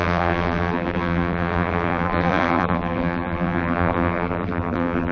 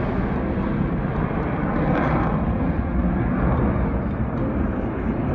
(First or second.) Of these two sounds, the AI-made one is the first